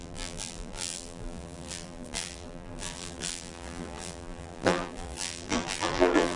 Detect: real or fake fake